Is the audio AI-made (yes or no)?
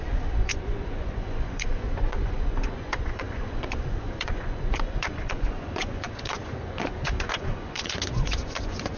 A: yes